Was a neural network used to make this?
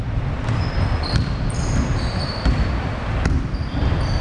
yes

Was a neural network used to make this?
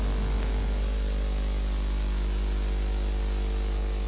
no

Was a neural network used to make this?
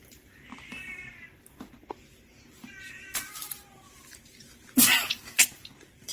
yes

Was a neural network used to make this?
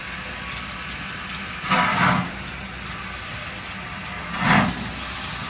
no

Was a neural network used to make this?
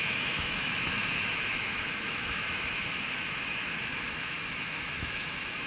yes